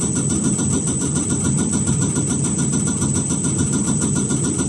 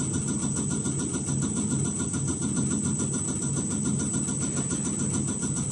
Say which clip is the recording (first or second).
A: second